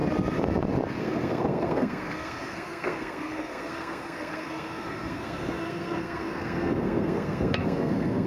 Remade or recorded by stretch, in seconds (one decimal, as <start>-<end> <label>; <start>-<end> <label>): 0.0-1.0 recorded; 1.0-8.3 remade